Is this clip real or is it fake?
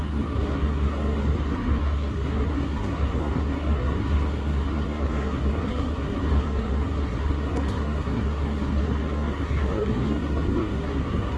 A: fake